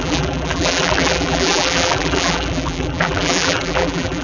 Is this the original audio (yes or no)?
no